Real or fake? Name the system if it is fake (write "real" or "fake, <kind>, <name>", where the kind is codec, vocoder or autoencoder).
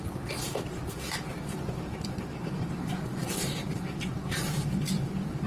fake, vocoder, BigVGAN v2